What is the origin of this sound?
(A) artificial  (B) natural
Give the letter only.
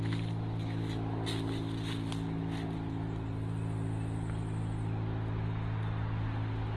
B